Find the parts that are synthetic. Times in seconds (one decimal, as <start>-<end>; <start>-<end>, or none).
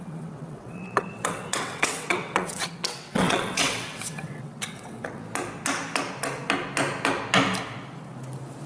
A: 0.0-5.2